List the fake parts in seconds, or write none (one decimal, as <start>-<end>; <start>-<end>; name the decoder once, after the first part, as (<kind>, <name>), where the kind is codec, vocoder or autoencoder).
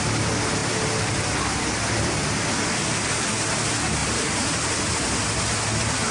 4.0-4.7 (vocoder, BigVGAN v2)